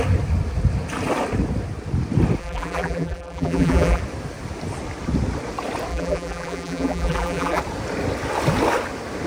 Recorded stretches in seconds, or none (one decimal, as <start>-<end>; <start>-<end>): 0.0-2.4; 4.0-5.9; 7.6-9.3